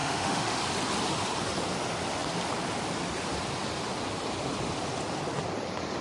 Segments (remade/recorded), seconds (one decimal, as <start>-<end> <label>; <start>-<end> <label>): 0.0-0.6 remade; 0.6-6.0 recorded